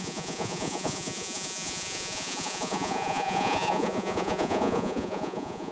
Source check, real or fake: fake